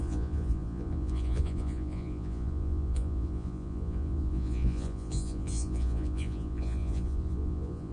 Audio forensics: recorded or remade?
remade